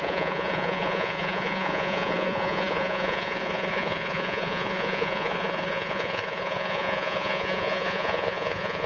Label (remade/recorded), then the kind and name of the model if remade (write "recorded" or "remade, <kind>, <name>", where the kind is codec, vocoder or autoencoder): remade, vocoder, Vocos